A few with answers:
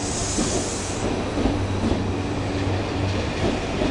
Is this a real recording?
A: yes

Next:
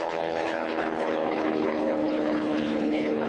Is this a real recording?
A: no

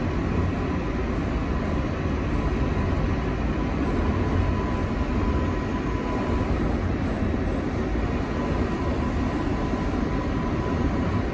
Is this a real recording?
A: yes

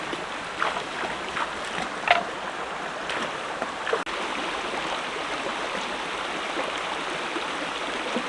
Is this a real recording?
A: yes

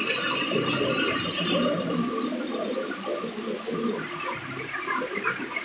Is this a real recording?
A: yes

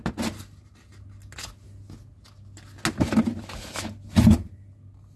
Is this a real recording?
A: yes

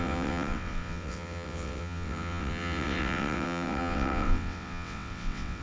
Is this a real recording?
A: no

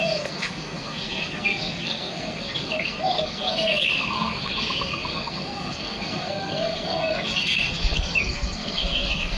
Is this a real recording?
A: no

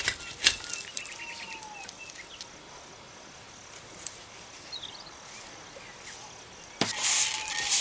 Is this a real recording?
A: yes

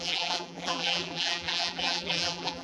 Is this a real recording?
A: no